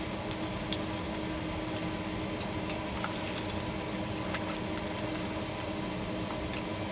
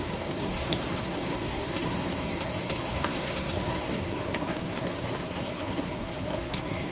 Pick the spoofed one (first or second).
second